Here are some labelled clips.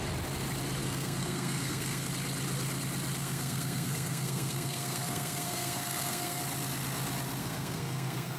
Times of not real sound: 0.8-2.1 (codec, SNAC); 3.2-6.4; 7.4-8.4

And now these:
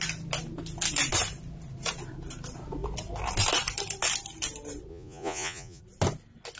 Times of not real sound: 4.9-5.8 (vocoder, Vocos)

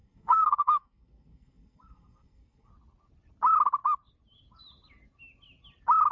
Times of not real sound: 0.0-2.7 (codec, SNAC)

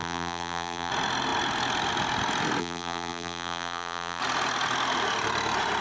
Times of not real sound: 0.0-0.9 (vocoder, BigVGAN v2); 2.6-4.2

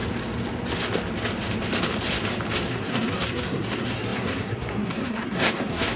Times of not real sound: 2.7-6.0 (codec, SNAC)

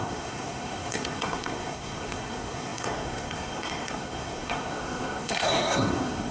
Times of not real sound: 0.0-6.3 (codec, SNAC)

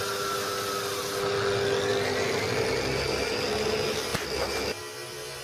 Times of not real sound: none